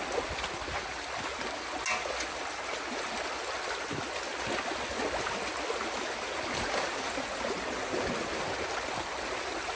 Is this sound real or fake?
real